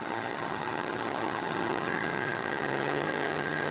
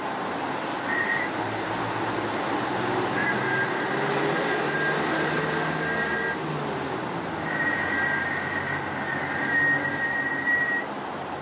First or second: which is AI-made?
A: first